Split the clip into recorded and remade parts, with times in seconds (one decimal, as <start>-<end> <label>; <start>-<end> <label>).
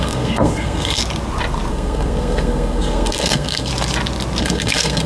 0.0-1.0 remade; 1.0-1.7 recorded; 1.7-3.7 remade; 3.7-4.4 recorded; 4.4-5.1 remade